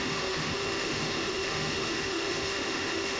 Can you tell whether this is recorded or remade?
remade